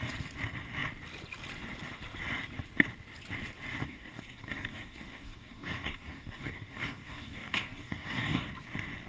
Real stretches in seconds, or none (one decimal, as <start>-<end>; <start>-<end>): 0.0-3.8; 8.5-9.1